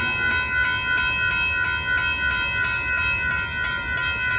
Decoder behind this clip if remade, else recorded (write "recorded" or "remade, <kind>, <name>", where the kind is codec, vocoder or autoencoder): recorded